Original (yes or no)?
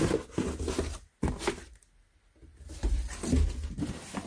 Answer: yes